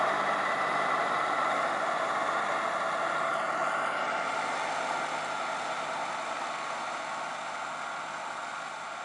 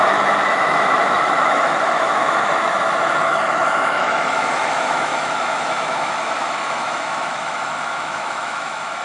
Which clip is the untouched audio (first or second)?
first